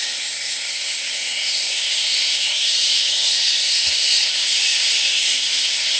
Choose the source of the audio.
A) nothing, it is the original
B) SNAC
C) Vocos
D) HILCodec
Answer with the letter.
B